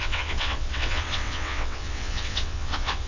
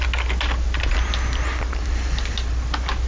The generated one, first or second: first